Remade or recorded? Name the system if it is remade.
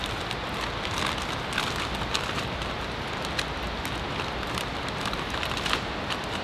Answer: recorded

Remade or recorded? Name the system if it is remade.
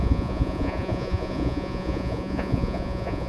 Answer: remade, vocoder, Vocos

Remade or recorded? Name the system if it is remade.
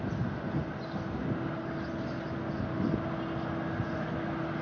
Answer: recorded